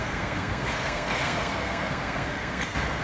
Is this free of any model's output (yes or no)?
no